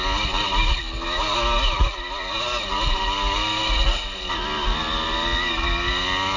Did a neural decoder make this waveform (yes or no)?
no